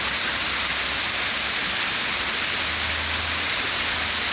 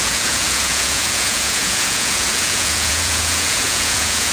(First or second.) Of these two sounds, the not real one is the second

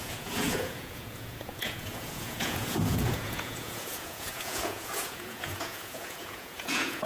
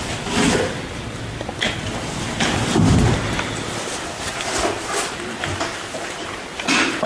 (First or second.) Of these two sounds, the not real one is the first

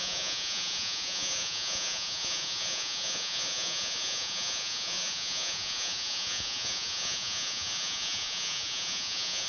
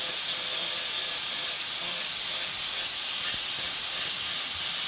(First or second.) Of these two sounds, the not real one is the first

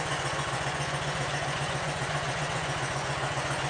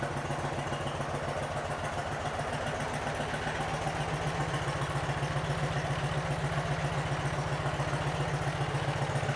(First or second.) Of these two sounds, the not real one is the first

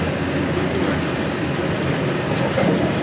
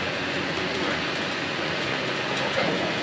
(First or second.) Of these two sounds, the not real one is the second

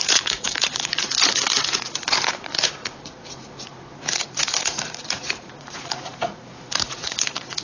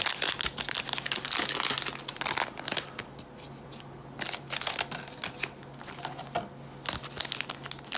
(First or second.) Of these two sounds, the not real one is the first